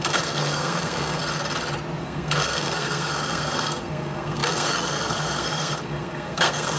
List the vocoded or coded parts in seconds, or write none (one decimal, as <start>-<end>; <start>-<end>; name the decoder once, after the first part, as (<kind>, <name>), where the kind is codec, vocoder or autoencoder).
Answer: 0.0-1.2 (codec, SNAC); 2.0-6.8